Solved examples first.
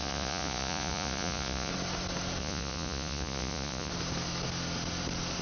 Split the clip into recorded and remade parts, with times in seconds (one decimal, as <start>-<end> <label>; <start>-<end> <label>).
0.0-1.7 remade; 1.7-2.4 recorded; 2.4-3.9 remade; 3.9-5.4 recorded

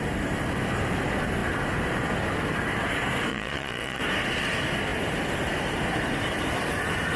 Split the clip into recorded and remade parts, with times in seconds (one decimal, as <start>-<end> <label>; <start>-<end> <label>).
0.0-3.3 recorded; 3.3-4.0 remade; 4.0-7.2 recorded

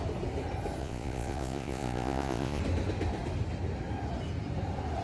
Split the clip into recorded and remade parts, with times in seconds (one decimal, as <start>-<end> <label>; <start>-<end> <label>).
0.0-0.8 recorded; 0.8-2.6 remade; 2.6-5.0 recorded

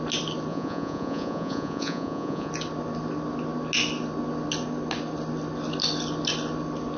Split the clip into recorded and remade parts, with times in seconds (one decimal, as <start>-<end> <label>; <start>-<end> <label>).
0.0-0.5 recorded; 0.5-2.5 remade; 2.5-7.0 recorded

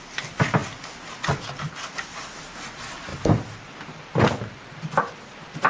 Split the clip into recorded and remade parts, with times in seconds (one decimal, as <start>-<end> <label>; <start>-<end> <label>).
0.0-5.7 recorded